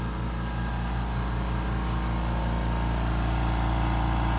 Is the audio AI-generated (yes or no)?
no